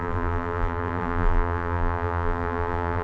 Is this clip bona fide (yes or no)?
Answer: no